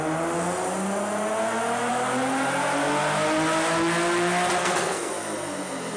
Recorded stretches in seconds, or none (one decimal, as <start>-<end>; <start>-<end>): 0.0-4.6; 5.1-6.0